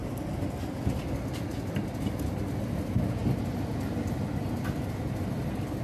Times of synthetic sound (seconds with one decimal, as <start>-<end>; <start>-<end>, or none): none